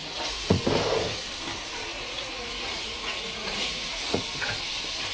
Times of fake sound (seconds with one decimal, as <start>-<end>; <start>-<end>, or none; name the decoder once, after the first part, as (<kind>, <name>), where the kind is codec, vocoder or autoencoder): 0.0-0.6 (vocoder, Vocos); 1.9-4.2